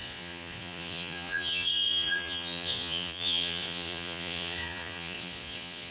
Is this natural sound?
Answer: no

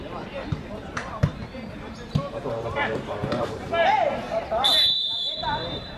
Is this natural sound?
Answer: no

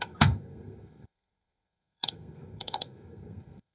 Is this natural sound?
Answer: no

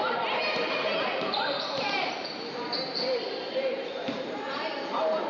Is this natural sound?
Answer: no